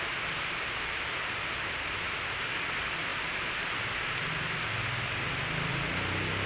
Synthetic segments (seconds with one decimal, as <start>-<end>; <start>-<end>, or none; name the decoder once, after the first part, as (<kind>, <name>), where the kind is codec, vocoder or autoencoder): none